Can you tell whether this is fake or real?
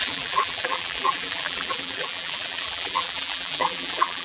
fake